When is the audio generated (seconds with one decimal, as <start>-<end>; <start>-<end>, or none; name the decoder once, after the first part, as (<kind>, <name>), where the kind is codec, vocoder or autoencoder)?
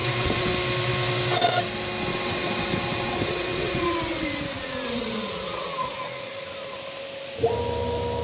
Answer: 0.0-0.5 (vocoder, WaveNeXt); 2.1-6.3